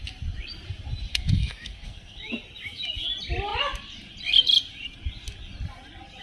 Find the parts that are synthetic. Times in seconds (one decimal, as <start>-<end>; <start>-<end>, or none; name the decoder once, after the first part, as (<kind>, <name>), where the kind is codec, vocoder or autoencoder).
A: 1.1-2.2 (codec, SNAC)

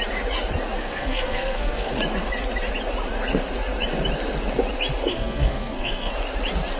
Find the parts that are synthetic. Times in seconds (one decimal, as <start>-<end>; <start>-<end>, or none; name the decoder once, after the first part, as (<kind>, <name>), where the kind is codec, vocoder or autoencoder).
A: 0.8-1.9 (codec, SNAC); 5.1-6.1

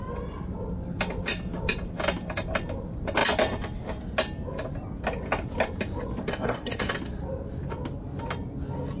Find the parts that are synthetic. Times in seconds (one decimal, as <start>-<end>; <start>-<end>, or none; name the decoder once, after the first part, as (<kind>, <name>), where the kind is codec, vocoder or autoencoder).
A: 6.3-6.9 (codec, SNAC)

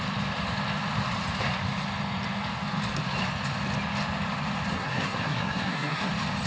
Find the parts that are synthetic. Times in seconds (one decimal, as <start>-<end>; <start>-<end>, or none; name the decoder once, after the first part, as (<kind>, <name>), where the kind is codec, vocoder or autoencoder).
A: 4.7-6.1 (codec, SNAC)

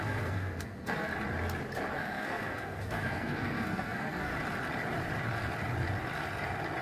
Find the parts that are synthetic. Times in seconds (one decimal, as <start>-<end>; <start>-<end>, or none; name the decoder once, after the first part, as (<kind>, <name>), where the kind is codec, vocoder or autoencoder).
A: 0.0-1.1 (codec, SNAC); 1.9-4.3